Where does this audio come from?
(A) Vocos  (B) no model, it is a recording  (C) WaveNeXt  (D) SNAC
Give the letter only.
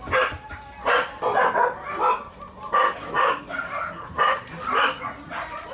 B